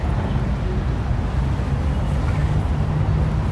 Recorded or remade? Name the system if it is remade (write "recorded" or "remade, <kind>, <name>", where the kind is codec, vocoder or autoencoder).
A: recorded